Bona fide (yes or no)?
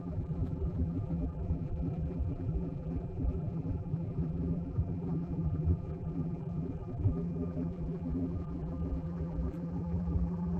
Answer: no